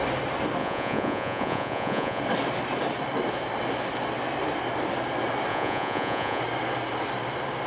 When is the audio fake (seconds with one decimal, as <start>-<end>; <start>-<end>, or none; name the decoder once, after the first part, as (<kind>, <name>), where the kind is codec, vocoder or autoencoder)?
0.6-2.2 (vocoder, Vocos); 5.5-6.4